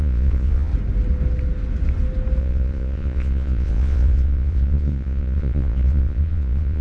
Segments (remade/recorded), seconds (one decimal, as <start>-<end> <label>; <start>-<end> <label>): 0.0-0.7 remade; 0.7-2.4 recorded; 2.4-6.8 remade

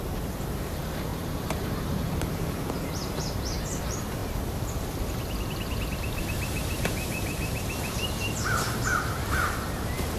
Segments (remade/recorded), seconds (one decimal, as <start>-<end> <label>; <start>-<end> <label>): 0.0-4.2 remade; 4.2-6.2 recorded; 6.2-10.2 remade

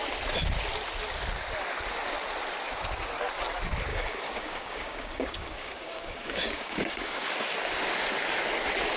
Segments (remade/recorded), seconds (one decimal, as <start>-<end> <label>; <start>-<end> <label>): 0.0-3.9 recorded; 3.9-7.3 remade; 7.3-9.0 recorded

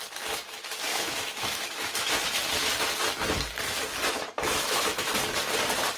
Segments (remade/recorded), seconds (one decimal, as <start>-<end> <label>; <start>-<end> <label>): 0.0-0.9 recorded; 0.9-2.1 remade; 2.1-4.1 recorded; 4.1-5.1 remade; 5.1-6.0 recorded

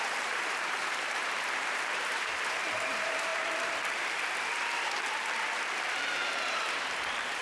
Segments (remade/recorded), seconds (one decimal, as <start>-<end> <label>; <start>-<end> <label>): 0.0-3.3 remade; 3.3-5.9 recorded; 5.9-6.6 remade; 6.6-7.4 recorded